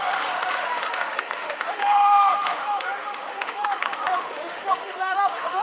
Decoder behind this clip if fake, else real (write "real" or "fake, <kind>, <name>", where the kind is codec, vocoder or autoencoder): fake, autoencoder, DAC-VAE